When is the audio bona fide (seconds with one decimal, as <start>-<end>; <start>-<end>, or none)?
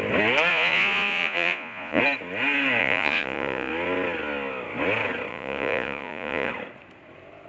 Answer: 0.0-0.5; 2.0-2.8; 3.7-5.3; 6.5-7.5